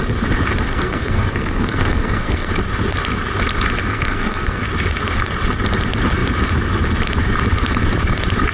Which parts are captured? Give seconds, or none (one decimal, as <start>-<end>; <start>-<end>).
0.0-0.7; 2.5-3.8; 4.6-8.5